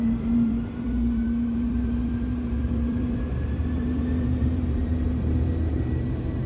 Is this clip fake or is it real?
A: fake